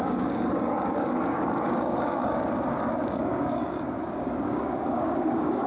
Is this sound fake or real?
fake